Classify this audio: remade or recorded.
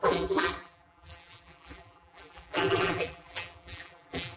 remade